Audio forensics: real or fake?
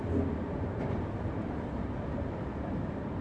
real